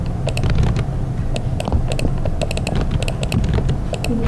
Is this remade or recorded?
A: recorded